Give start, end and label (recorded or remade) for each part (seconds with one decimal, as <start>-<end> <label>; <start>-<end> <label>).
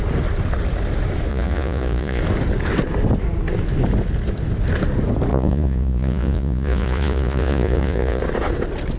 0.0-1.3 recorded; 1.3-2.2 remade; 2.2-5.3 recorded; 5.3-8.2 remade; 8.2-9.0 recorded